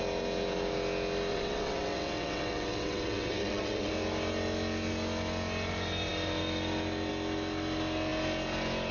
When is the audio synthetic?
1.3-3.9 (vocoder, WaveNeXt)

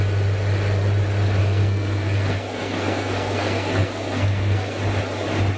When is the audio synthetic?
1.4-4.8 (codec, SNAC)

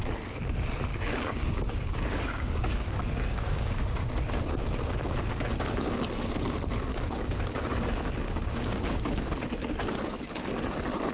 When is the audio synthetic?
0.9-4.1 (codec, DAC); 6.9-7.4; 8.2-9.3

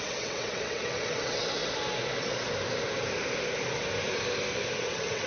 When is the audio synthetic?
0.0-1.6 (vocoder, WaveNeXt); 4.8-5.3

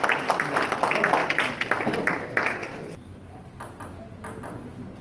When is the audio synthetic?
none